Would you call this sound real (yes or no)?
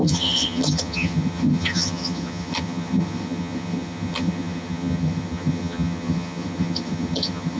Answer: no